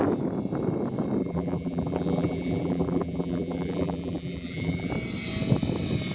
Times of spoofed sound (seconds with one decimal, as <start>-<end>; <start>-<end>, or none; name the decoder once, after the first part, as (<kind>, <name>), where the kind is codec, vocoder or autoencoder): 1.2-4.9 (vocoder, BigVGAN v2)